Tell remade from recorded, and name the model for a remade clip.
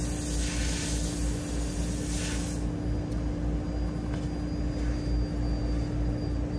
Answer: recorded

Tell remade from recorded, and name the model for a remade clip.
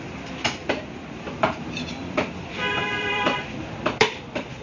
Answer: remade, vocoder, BigVGAN v2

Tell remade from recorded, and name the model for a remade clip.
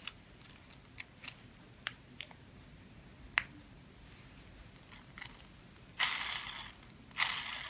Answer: recorded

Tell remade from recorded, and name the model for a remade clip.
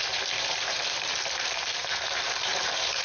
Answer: remade, vocoder, BigVGAN v2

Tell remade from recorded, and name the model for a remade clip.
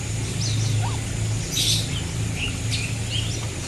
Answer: recorded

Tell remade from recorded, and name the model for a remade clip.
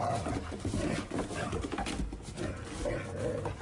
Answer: recorded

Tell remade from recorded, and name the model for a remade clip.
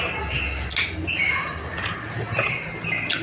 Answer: recorded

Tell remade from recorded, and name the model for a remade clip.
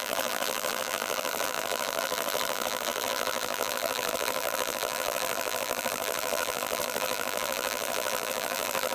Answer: remade, vocoder, BigVGAN v2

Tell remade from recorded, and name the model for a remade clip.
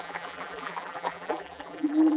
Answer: remade, vocoder, BigVGAN v2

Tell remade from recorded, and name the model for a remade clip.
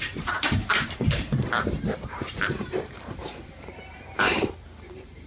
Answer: remade, vocoder, BigVGAN v2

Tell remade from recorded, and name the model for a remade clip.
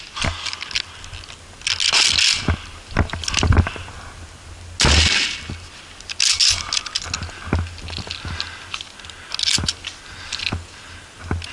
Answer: recorded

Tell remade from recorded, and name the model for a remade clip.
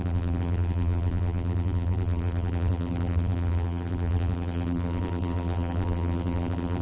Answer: remade, vocoder, BigVGAN v2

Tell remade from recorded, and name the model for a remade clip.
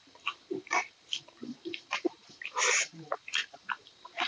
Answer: remade, vocoder, BigVGAN v2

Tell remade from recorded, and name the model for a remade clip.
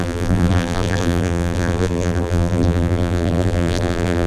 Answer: remade, vocoder, BigVGAN v2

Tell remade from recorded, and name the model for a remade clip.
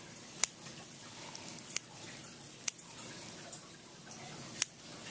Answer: recorded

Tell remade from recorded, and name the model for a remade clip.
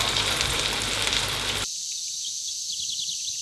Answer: recorded